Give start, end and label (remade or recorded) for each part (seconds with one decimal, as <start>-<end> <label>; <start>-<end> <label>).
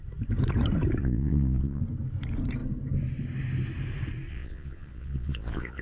0.0-1.0 recorded; 1.0-1.8 remade; 1.8-4.3 recorded; 4.3-5.8 remade